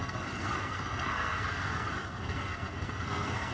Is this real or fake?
fake